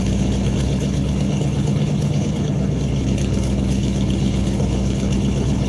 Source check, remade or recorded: remade